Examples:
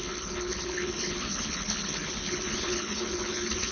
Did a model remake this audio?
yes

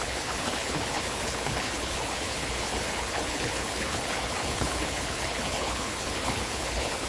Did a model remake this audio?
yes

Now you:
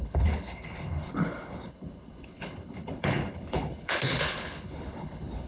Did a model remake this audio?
yes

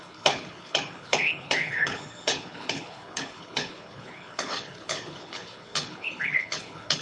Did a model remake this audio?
yes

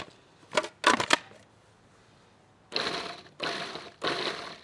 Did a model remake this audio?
no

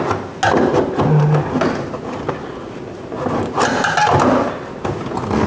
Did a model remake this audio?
no